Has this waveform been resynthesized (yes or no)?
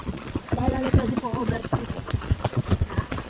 yes